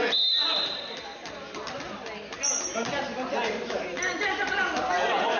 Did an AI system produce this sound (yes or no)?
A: no